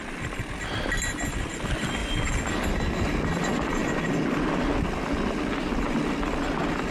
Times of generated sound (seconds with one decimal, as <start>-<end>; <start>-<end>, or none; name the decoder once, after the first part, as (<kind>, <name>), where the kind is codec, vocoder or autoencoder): none